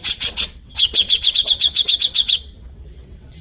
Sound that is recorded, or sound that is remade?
remade